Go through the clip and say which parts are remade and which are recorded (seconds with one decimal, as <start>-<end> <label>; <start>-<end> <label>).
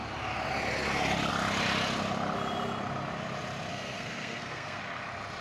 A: 0.0-3.7 recorded; 3.7-4.8 remade; 4.8-5.4 recorded